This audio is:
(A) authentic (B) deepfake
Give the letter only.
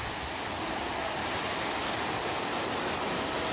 A